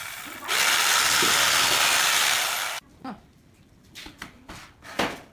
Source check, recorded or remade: recorded